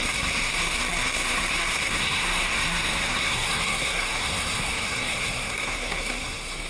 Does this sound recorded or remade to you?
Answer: remade